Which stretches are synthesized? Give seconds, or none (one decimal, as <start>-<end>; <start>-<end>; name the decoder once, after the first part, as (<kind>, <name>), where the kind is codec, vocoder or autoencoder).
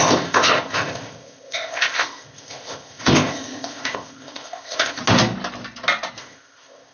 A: 0.0-5.0 (codec, ZipCodec); 6.2-6.9